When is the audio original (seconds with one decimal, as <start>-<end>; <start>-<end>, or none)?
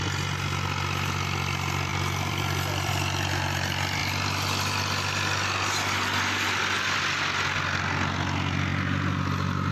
0.0-1.9; 2.9-9.7